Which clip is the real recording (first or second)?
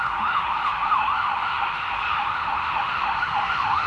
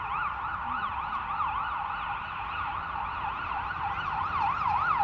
second